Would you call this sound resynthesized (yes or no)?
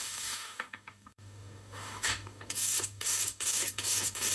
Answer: yes